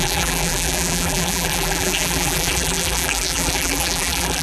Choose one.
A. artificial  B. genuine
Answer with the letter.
A